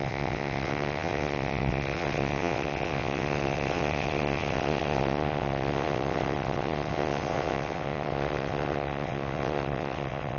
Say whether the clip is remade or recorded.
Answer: remade